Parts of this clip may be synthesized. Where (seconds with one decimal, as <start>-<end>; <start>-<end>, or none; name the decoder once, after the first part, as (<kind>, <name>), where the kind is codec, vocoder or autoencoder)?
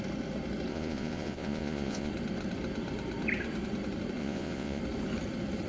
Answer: 0.7-2.1 (vocoder, Vocos); 4.2-4.8